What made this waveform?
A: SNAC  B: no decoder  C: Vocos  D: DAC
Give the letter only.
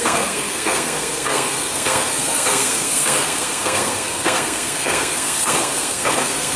A